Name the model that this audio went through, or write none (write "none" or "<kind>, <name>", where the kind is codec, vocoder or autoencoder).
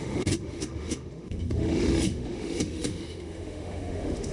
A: autoencoder, DAC-VAE